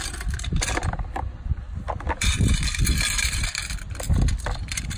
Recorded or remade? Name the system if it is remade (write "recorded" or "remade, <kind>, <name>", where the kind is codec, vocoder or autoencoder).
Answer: remade, vocoder, BigVGAN v2